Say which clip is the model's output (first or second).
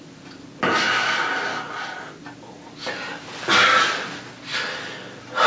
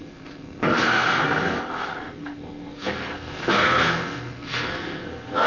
second